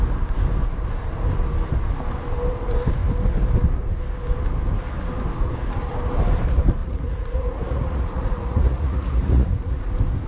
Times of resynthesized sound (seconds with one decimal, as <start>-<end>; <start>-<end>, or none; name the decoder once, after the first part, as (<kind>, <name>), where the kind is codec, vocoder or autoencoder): 6.8-9.8 (vocoder, Vocos)